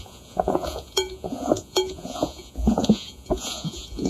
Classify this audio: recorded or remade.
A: remade